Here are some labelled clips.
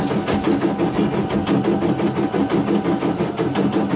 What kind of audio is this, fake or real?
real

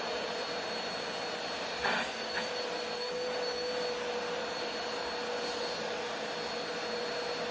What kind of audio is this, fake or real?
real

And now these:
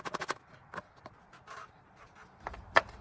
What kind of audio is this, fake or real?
fake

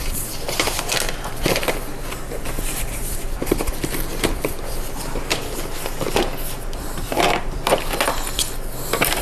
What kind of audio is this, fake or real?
fake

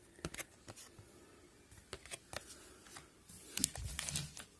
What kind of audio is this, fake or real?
real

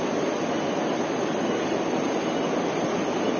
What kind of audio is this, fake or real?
real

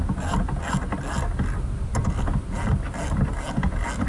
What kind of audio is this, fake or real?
real